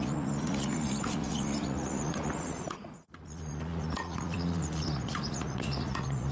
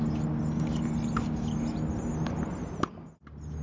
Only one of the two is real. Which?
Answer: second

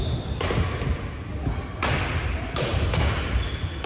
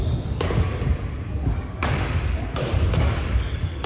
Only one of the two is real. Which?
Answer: first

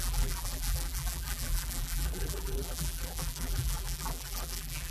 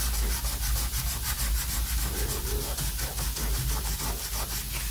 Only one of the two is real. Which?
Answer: second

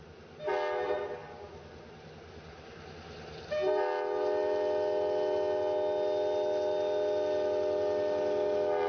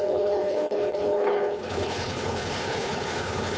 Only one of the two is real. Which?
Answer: first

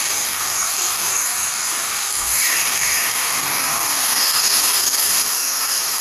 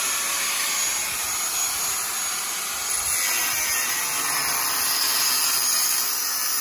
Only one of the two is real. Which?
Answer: second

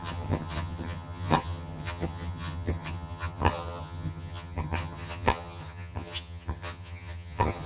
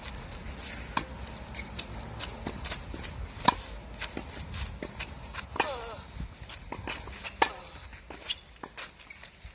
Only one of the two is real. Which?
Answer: second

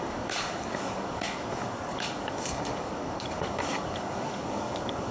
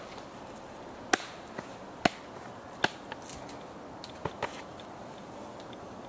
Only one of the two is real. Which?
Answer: second